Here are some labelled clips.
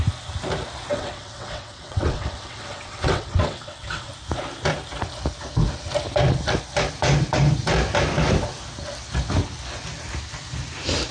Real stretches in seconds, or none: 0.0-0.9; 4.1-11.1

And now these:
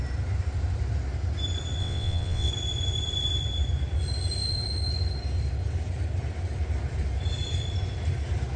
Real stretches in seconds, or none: 0.0-1.8; 2.5-8.6

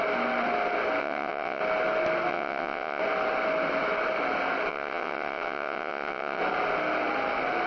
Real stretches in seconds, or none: 0.0-1.0; 1.6-2.3; 3.0-4.7; 6.4-7.7